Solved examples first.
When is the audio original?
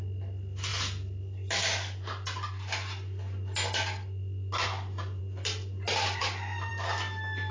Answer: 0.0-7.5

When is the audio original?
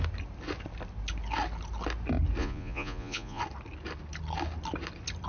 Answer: 0.0-2.4; 3.4-5.3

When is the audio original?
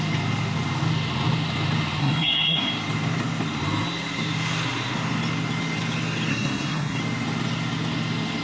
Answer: 0.0-2.0; 2.7-6.3; 7.0-8.4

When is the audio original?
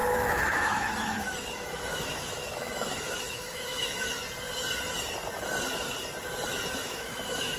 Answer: 4.2-6.8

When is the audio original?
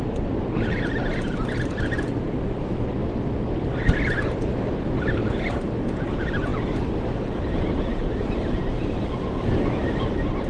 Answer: 0.0-10.5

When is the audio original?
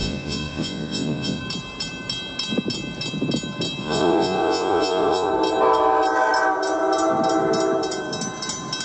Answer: 1.4-3.8; 5.3-8.8